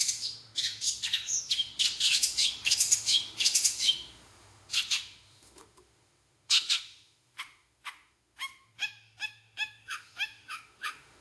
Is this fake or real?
fake